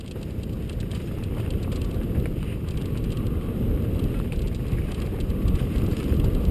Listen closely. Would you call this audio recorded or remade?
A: recorded